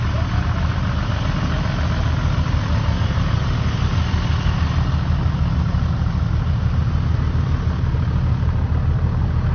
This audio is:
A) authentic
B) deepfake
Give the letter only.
A